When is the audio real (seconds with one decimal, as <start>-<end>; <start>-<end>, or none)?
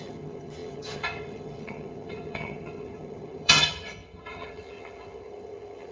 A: none